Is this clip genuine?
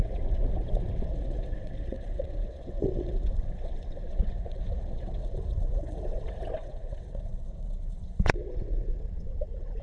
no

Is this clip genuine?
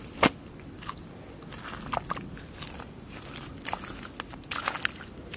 yes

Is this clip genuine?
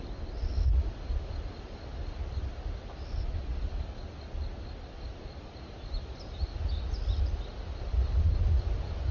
yes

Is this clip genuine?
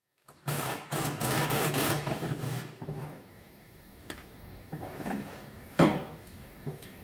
no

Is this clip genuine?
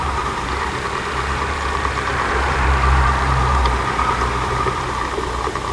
no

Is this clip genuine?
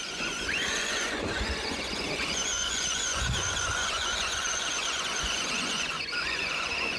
no